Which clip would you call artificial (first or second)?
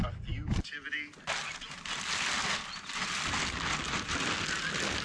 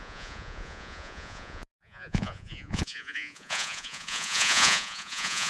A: second